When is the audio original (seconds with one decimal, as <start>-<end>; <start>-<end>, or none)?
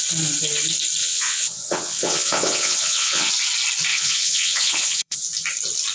0.0-1.0; 3.3-3.9; 5.2-5.9